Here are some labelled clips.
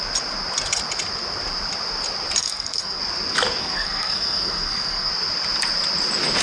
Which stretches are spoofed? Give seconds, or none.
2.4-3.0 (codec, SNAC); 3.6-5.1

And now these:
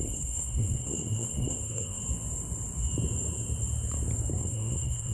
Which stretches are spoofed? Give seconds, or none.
0.0-2.0 (codec, SNAC); 4.3-5.1

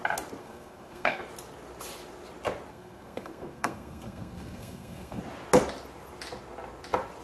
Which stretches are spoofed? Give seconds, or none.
0.4-1.2 (codec, SNAC); 2.7-5.2